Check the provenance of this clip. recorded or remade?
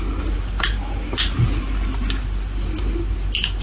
recorded